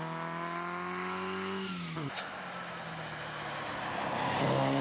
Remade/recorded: recorded